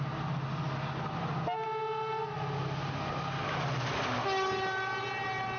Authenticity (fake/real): real